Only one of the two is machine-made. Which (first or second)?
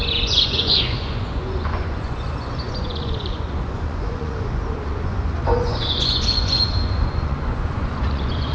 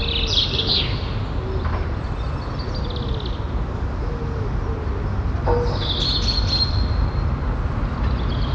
first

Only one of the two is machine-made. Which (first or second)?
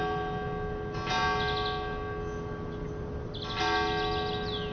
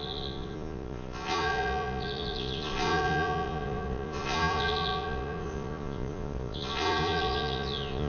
second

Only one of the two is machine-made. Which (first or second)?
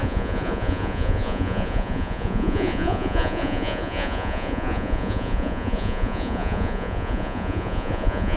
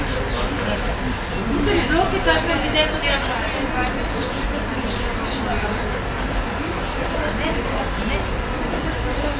first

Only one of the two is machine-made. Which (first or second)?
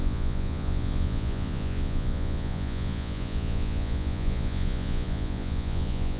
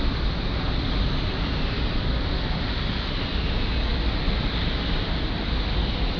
first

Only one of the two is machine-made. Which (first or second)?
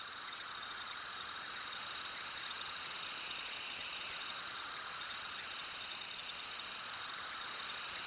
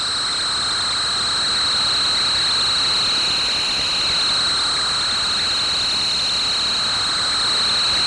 first